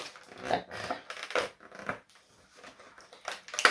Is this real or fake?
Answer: real